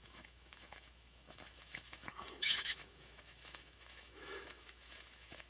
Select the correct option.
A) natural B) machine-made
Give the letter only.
B